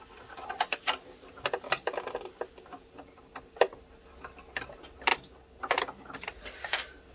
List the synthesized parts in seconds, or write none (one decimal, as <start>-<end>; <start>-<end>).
none